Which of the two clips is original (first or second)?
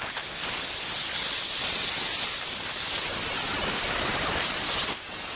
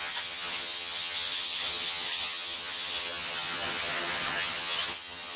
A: first